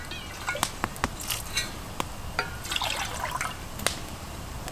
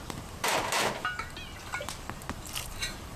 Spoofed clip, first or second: second